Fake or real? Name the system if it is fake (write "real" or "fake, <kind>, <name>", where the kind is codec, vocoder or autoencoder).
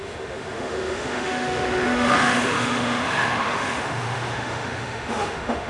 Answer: fake, autoencoder, DAC-VAE